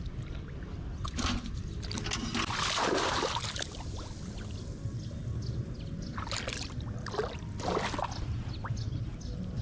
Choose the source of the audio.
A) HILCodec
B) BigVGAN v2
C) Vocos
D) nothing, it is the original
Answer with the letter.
D